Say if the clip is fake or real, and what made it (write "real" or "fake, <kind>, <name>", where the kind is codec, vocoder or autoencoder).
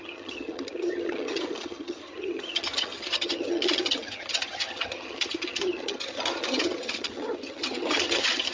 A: fake, vocoder, HiFi-GAN